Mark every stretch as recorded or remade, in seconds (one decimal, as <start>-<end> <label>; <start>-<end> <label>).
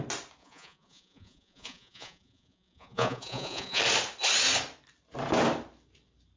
0.0-0.4 recorded; 0.4-3.8 remade; 3.8-6.4 recorded